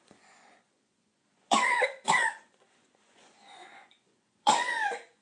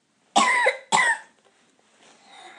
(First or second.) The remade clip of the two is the first